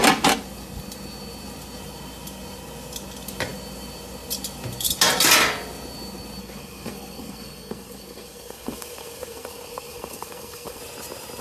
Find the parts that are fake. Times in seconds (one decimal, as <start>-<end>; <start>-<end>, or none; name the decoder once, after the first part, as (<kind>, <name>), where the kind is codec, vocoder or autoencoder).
6.4-10.8 (codec, SNAC)